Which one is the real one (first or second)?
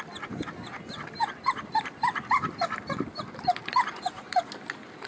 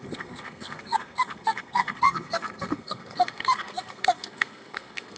first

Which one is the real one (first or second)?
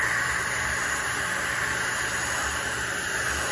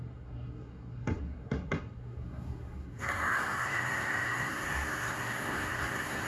first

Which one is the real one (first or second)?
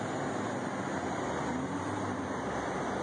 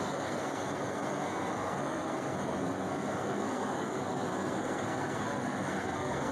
first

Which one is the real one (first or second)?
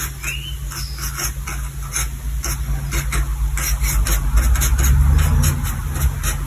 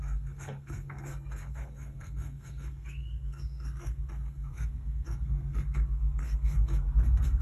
first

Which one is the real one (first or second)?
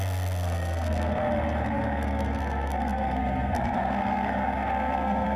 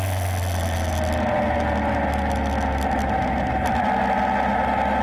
second